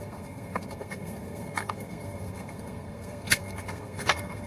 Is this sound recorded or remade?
remade